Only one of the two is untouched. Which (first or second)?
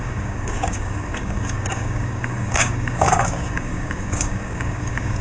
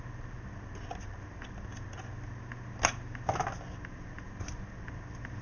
second